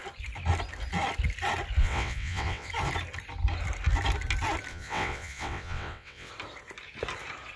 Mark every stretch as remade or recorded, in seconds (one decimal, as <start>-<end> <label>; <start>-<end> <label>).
0.0-1.8 recorded; 1.8-2.7 remade; 2.7-4.7 recorded; 4.7-6.3 remade; 6.3-7.6 recorded